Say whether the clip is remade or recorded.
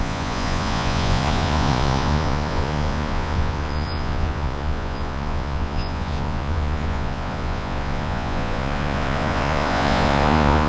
remade